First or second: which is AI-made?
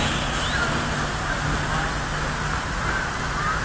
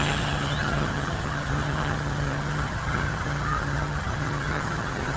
second